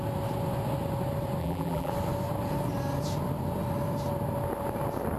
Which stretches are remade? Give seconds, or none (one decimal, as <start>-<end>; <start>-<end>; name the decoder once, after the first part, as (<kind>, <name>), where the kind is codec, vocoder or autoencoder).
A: 1.4-1.9 (vocoder, BigVGAN v2)